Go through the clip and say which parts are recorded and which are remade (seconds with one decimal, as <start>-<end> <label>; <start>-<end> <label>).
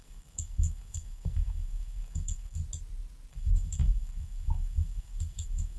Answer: 0.0-2.6 remade; 2.6-3.3 recorded; 3.3-5.8 remade